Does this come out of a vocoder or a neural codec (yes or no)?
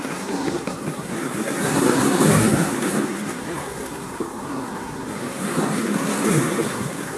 yes